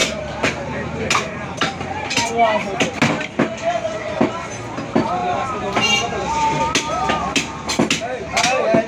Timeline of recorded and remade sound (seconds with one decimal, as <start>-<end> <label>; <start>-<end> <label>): 0.0-2.3 remade; 2.3-5.2 recorded; 5.2-6.6 remade; 6.6-8.9 recorded